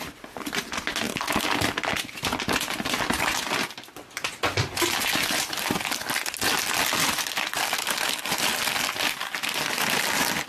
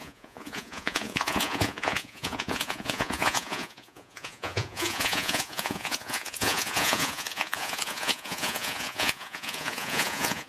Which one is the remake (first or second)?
second